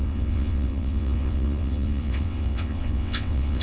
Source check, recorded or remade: remade